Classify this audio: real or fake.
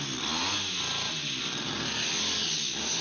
real